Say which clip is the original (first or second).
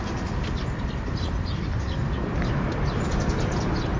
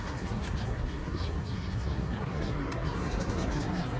first